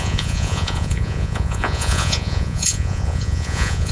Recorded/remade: remade